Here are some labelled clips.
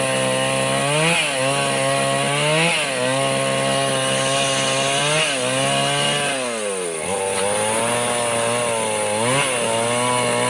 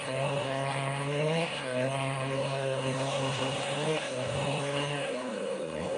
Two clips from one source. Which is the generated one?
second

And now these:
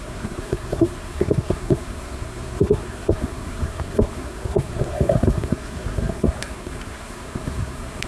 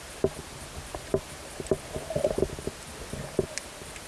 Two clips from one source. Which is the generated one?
first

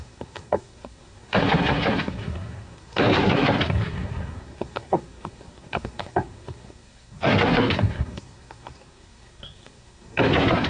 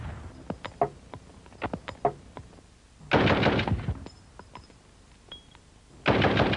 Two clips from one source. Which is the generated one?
first